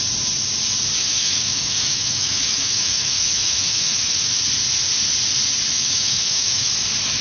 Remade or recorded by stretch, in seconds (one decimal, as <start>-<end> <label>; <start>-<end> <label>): 0.0-1.0 recorded; 1.0-4.4 remade; 4.4-5.7 recorded; 5.7-6.7 remade; 6.7-7.2 recorded

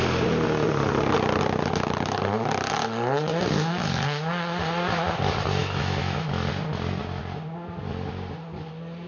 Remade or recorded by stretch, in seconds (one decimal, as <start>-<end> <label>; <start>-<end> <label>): 0.0-5.6 recorded; 5.6-6.3 remade; 6.3-9.1 recorded